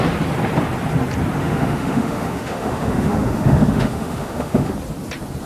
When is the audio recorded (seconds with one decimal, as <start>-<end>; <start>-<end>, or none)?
0.0-1.4; 4.7-5.5